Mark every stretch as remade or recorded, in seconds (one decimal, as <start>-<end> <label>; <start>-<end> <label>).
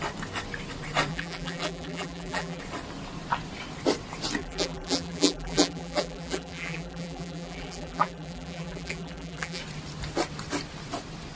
0.0-1.1 recorded; 1.1-2.6 remade; 2.6-4.4 recorded; 4.4-9.6 remade; 9.6-11.4 recorded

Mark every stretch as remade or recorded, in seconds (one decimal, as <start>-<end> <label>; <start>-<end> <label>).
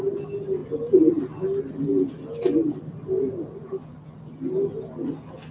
0.0-0.6 recorded; 0.6-1.3 remade; 1.3-5.5 recorded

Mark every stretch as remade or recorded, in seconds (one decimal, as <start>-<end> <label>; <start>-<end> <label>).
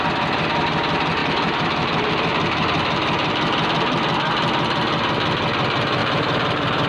0.0-1.2 recorded; 1.2-2.1 remade; 2.1-6.0 recorded; 6.0-6.9 remade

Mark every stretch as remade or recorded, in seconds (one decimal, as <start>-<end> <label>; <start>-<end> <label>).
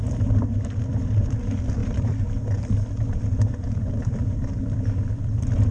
0.0-5.7 remade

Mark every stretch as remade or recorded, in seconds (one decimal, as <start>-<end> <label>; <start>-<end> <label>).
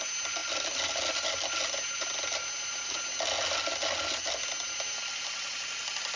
0.0-6.2 recorded